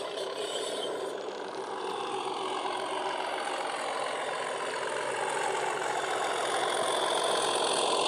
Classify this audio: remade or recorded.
recorded